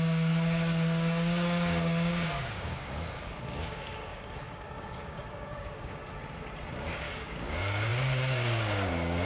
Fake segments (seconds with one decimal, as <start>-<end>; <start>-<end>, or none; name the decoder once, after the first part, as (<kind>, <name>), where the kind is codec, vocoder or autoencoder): 0.0-6.0 (codec, DAC); 6.8-9.3